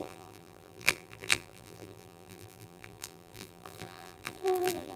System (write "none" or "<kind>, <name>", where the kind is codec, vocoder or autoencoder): vocoder, BigVGAN v2